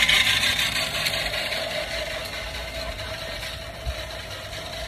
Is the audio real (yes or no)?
yes